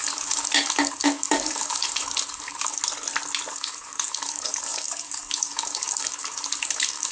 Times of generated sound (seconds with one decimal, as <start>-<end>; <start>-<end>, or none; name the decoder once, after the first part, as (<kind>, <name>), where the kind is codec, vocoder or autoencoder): 0.0-2.8 (codec, DAC); 3.5-7.1